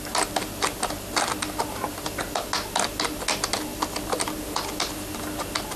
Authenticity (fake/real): real